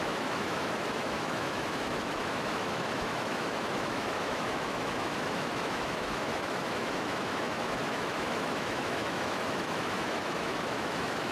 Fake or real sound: fake